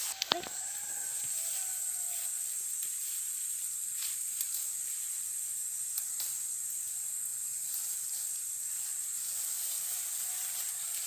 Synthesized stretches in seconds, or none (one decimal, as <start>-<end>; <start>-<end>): none